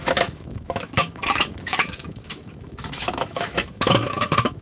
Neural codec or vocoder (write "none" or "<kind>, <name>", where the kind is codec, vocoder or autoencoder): autoencoder, DAC-VAE